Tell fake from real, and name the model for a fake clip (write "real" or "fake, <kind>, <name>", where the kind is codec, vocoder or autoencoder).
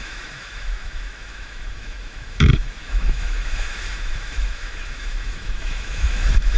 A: fake, autoencoder, DAC-VAE